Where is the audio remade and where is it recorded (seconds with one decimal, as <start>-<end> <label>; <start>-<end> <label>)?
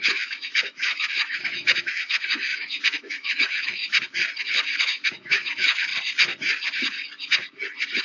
0.0-3.8 remade; 3.8-4.8 recorded; 4.8-5.9 remade; 5.9-8.0 recorded